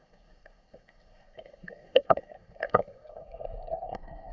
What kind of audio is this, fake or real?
fake